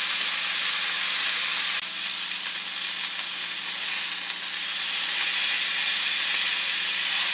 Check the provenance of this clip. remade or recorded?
recorded